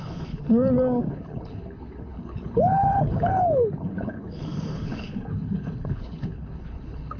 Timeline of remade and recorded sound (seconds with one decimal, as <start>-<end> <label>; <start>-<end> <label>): 0.0-0.4 remade; 0.4-1.1 recorded; 1.1-7.2 remade